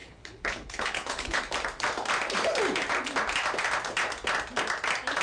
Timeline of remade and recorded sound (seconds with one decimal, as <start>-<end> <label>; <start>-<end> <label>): 0.0-1.4 remade; 1.4-5.2 recorded